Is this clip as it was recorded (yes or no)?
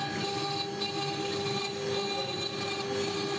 yes